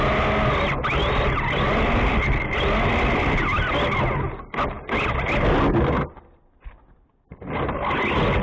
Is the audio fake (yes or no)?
no